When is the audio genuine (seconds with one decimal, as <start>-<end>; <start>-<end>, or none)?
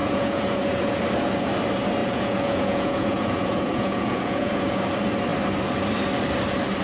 1.0-2.0; 4.8-6.8